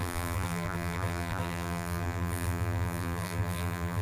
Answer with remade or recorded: remade